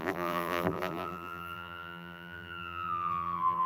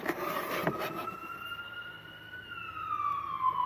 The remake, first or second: first